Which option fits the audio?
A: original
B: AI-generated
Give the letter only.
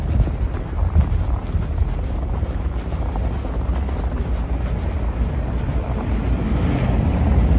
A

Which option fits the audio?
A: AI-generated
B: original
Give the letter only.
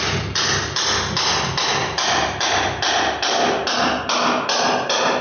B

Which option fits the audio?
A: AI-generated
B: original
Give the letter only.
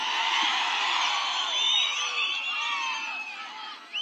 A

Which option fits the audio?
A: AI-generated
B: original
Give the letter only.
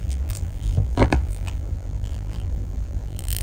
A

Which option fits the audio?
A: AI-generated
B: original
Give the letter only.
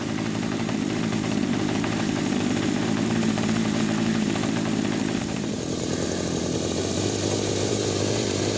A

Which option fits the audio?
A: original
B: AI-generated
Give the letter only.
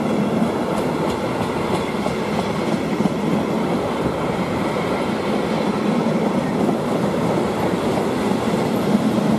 B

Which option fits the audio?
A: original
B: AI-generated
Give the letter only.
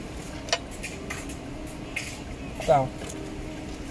A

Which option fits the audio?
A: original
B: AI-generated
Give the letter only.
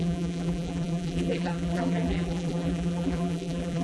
B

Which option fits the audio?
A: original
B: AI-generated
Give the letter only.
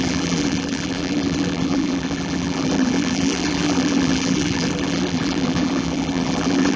B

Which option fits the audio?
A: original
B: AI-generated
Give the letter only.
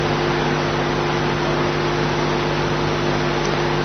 A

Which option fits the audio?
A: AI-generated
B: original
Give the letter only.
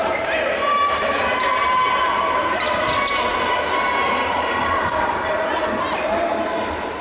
A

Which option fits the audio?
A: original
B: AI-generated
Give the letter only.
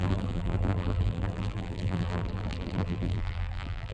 B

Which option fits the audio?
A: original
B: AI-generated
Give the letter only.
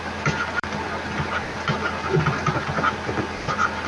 B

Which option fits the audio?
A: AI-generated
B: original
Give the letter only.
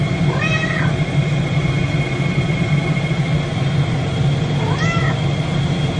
B